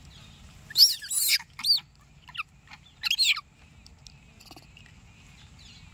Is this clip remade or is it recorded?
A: recorded